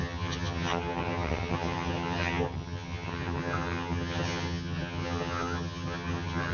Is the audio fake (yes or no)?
yes